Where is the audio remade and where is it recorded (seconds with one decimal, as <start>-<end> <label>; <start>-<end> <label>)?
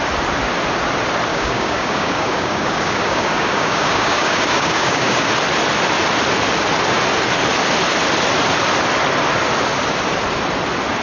0.0-1.3 recorded; 1.3-5.3 remade; 5.3-11.0 recorded